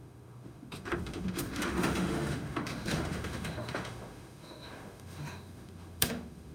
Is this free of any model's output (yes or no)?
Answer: no